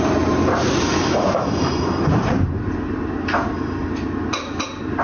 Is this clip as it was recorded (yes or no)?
no